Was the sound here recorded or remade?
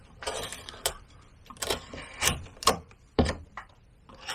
remade